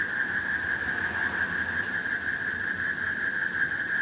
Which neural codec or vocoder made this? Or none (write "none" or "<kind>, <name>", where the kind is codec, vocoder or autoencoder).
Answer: none